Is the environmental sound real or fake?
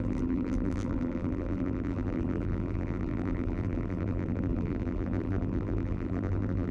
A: fake